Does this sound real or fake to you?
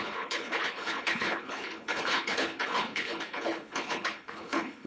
fake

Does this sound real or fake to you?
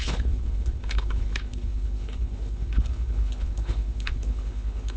fake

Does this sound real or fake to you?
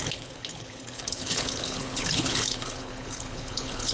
fake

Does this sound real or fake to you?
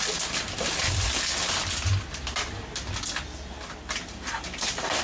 real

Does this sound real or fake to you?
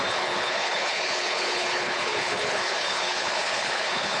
fake